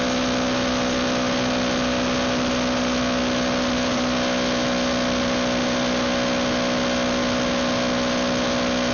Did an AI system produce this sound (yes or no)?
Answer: no